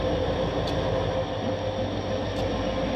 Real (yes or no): yes